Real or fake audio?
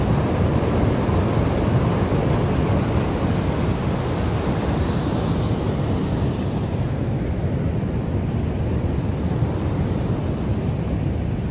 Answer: real